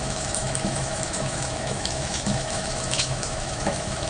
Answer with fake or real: fake